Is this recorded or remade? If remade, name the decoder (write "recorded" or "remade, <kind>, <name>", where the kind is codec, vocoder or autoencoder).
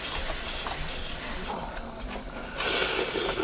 recorded